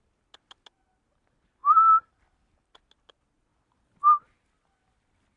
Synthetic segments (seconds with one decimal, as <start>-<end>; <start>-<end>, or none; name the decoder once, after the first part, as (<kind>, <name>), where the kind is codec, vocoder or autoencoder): 1.6-2.7 (vocoder, BigVGAN v2)